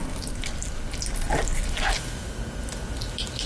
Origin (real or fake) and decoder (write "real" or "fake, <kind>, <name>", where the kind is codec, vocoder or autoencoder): real